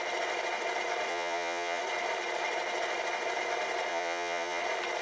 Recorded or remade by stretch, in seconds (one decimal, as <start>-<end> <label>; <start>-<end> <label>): 0.0-1.1 recorded; 1.1-1.8 remade; 1.8-3.9 recorded; 3.9-4.6 remade; 4.6-5.0 recorded